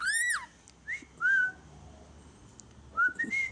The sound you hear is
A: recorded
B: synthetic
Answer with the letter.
A